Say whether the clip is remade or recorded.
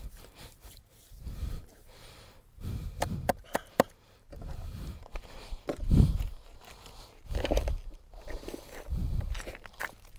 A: remade